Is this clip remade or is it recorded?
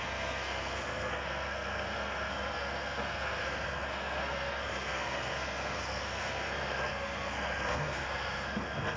remade